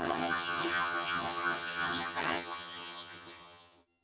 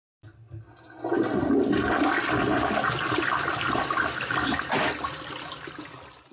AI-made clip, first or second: first